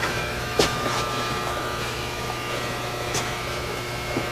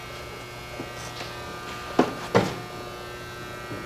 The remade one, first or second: first